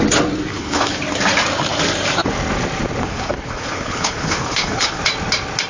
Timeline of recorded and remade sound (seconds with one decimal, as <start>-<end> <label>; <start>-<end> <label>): 0.0-0.5 recorded; 0.5-1.0 remade; 1.0-3.0 recorded; 3.0-5.0 remade; 5.0-5.7 recorded